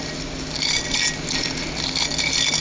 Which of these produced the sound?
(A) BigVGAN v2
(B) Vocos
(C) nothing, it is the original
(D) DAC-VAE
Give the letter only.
C